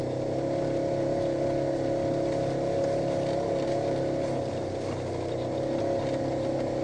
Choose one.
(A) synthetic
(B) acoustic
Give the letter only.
B